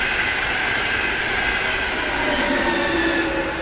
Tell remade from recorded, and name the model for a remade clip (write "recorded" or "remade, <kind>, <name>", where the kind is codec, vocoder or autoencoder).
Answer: recorded